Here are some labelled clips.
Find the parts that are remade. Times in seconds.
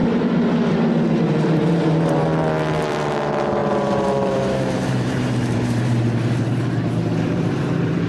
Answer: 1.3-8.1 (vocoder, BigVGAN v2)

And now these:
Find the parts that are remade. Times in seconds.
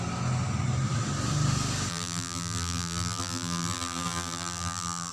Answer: 1.9-5.1 (vocoder, BigVGAN v2)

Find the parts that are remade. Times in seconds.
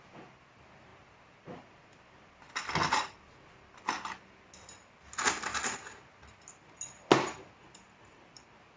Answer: none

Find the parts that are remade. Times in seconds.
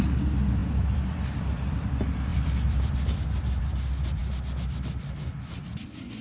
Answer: 0.6-1.9 (vocoder, BigVGAN v2); 2.3-3.6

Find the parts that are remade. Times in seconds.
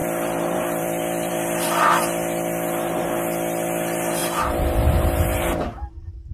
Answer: 0.0-1.3 (vocoder, BigVGAN v2); 4.2-6.3